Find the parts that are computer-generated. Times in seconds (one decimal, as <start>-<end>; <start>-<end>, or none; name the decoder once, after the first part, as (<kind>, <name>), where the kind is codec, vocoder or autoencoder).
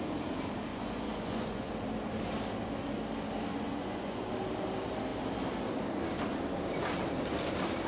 0.7-1.7 (vocoder, Vocos); 3.5-4.3